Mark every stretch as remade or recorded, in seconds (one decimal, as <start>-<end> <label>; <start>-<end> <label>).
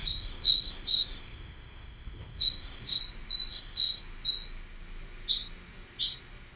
0.0-3.0 remade; 3.0-3.5 recorded; 3.5-4.0 remade; 4.0-6.6 recorded